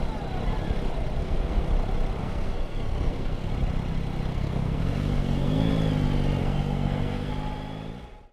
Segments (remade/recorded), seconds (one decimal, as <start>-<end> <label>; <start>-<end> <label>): 0.0-1.2 recorded; 1.2-1.7 remade; 1.7-2.2 recorded; 2.2-3.5 remade; 3.5-4.3 recorded; 4.3-5.7 remade; 5.7-6.4 recorded; 6.4-7.3 remade; 7.3-8.3 recorded